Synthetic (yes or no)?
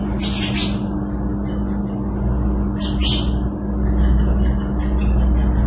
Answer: no